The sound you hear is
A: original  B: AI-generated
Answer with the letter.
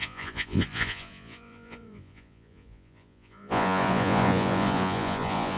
B